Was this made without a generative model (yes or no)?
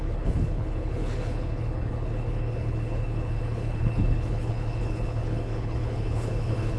no